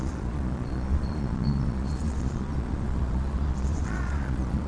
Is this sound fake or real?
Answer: fake